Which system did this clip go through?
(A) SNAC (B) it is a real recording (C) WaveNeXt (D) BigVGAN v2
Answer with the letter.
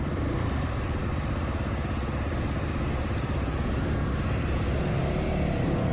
B